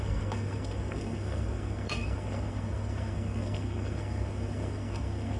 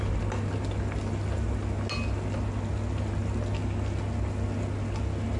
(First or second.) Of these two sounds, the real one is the second